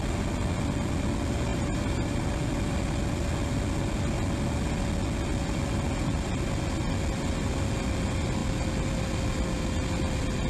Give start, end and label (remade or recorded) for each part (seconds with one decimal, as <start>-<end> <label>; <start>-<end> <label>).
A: 0.0-1.5 recorded; 1.5-2.2 remade; 2.2-10.5 recorded

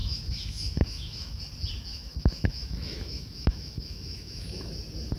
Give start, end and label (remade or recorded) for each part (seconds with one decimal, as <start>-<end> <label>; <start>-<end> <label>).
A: 0.0-1.4 remade; 1.4-1.9 recorded; 1.9-4.7 remade; 4.7-5.2 recorded

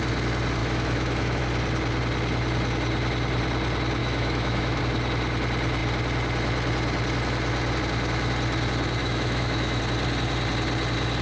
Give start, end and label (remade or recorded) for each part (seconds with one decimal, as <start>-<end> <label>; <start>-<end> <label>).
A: 0.0-0.6 recorded; 0.6-1.4 remade; 1.4-4.0 recorded; 4.0-4.8 remade; 4.8-9.0 recorded; 9.0-9.8 remade; 9.8-11.2 recorded

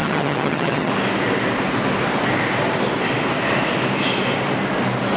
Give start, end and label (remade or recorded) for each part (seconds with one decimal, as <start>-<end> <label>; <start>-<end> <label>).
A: 0.0-0.9 remade; 0.9-5.2 recorded

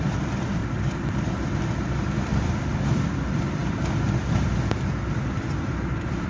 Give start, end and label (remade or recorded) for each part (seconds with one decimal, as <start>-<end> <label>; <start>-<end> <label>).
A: 0.0-6.3 remade

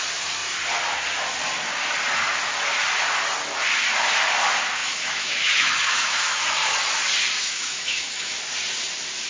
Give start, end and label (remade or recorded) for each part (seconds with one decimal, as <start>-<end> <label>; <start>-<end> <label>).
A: 0.0-4.8 recorded; 4.8-6.4 remade; 6.4-7.4 recorded; 7.4-8.4 remade; 8.4-9.3 recorded

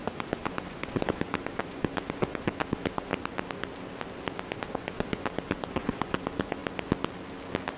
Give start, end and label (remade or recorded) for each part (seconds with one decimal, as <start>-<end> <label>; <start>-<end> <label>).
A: 0.0-3.1 remade; 3.1-4.6 recorded; 4.6-6.6 remade; 6.6-7.8 recorded

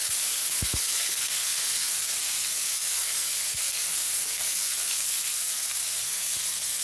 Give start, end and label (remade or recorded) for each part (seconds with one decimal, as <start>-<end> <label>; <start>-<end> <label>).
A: 0.0-6.8 remade